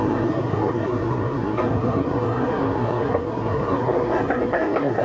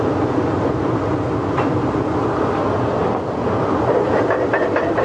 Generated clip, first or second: first